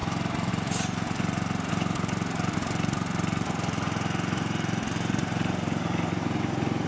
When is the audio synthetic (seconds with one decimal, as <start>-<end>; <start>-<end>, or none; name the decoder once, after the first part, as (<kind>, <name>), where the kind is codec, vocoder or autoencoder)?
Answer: 0.5-6.9 (vocoder, BigVGAN v2)